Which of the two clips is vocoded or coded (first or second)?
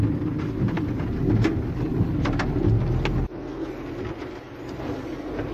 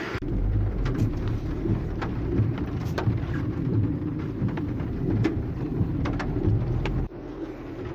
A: second